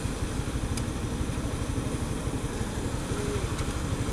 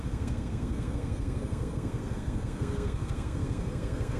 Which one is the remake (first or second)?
second